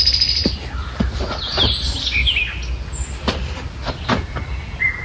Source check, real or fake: real